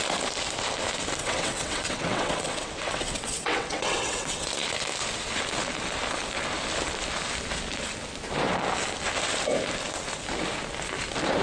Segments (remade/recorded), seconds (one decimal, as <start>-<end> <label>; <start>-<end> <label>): 0.0-1.2 recorded; 1.2-4.5 remade; 4.5-11.4 recorded